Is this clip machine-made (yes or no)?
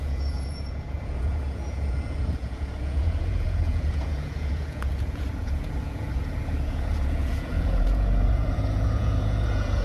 yes